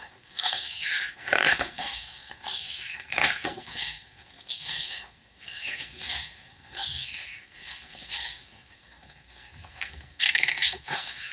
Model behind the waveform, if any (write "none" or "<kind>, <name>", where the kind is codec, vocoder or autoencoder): codec, SNAC